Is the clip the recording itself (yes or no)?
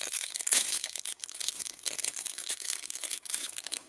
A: no